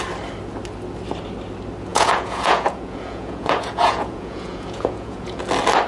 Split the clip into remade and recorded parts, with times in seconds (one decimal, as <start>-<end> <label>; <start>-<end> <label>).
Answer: 0.0-1.9 recorded; 1.9-5.4 remade; 5.4-5.9 recorded